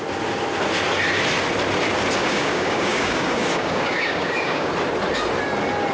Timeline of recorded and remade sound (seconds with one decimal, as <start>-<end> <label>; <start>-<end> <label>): 0.0-2.2 recorded; 2.2-4.7 remade; 4.7-5.9 recorded